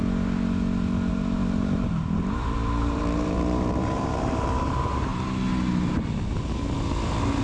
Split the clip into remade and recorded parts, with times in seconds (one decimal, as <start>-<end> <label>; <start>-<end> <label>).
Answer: 0.0-1.1 recorded; 1.1-5.1 remade; 5.1-7.4 recorded